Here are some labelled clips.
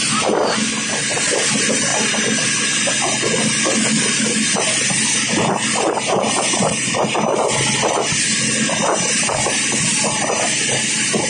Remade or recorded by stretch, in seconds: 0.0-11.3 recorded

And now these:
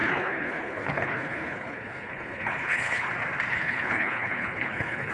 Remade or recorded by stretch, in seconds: 0.0-3.1 remade; 3.1-3.5 recorded; 3.5-5.1 remade

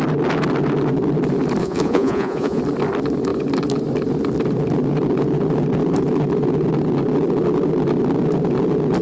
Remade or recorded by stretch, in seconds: 0.0-1.6 recorded; 1.6-2.6 remade; 2.6-9.0 recorded

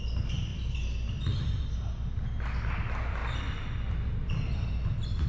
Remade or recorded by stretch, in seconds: 0.0-5.3 recorded

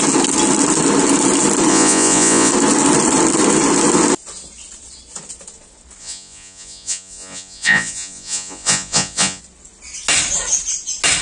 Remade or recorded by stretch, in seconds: 0.0-1.7 recorded; 1.7-2.5 remade; 2.5-6.0 recorded; 6.0-9.4 remade; 9.4-11.2 recorded

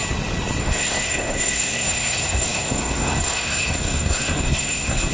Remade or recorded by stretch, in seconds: 0.0-0.6 recorded; 0.6-5.1 remade

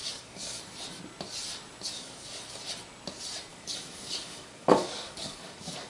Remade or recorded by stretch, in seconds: 0.0-0.6 remade; 0.6-1.9 recorded; 1.9-2.4 remade; 2.4-3.5 recorded; 3.5-5.9 remade

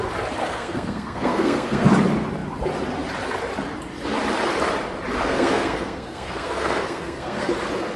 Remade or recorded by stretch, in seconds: 0.0-0.4 recorded; 0.4-1.9 remade; 1.9-5.2 recorded; 5.2-7.5 remade; 7.5-8.0 recorded